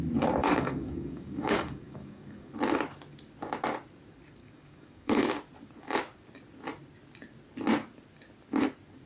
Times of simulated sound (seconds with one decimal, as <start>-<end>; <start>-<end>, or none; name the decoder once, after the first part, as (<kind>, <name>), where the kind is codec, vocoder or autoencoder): 0.4-2.5 (codec, DAC); 4.4-5.3